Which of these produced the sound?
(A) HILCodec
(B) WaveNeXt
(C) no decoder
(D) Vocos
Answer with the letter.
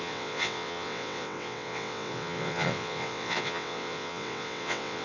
B